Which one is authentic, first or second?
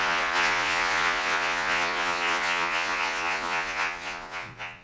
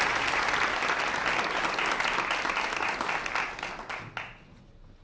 second